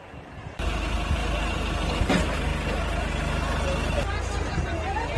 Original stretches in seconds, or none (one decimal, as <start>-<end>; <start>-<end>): 0.0-5.2